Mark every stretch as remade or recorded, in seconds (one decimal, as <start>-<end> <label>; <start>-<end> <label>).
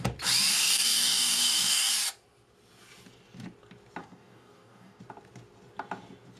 0.0-0.5 recorded; 0.5-1.9 remade; 1.9-4.0 recorded; 4.0-5.0 remade; 5.0-6.4 recorded